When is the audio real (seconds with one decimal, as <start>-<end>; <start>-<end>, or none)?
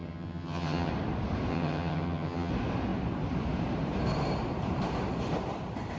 0.9-1.5; 2.5-6.0